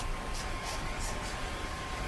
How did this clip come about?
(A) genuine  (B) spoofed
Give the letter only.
B